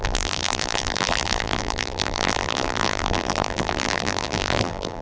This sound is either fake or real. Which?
fake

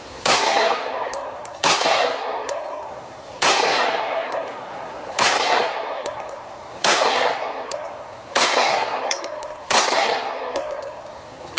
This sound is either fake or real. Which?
fake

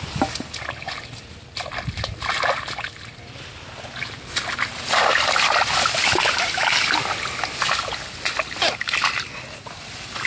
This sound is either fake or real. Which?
real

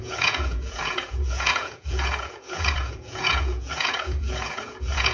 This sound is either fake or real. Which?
fake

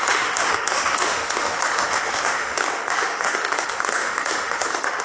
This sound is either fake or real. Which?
fake